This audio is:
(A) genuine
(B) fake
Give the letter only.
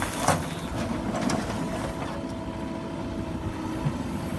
A